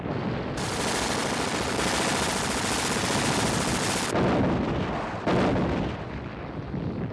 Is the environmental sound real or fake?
real